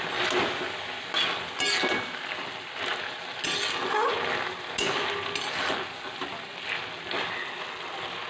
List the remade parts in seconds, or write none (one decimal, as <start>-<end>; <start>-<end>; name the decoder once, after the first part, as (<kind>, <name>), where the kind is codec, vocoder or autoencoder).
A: none